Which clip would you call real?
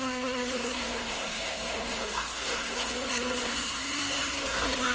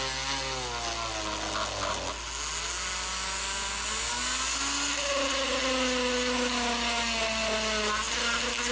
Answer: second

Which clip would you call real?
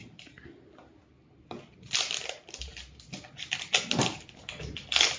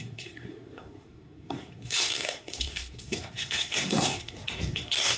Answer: first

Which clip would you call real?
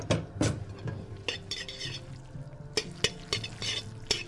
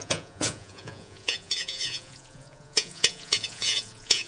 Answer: first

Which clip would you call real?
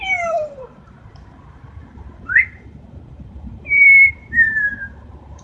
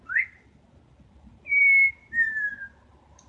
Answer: second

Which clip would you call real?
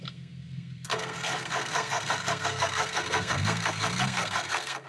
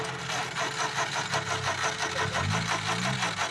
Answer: second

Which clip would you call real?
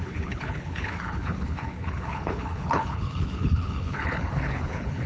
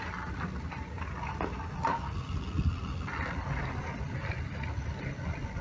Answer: second